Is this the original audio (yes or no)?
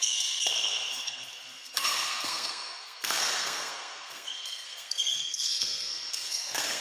no